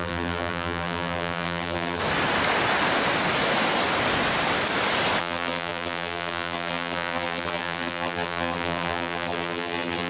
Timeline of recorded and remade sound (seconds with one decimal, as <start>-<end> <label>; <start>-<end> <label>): 0.0-2.0 remade; 2.0-5.2 recorded; 5.2-10.1 remade